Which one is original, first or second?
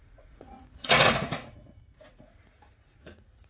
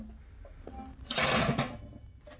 second